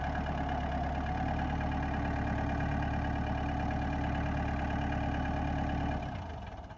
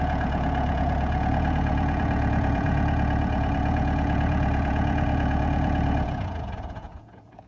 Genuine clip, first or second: first